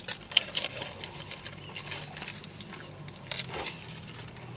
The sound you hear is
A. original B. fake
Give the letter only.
A